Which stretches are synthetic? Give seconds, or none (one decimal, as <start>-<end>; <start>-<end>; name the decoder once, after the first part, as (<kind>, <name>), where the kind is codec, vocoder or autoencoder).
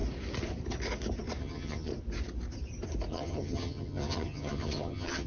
1.4-1.9 (vocoder, HiFi-GAN); 3.1-5.3